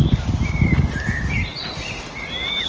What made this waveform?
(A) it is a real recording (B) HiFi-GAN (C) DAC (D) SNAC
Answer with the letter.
A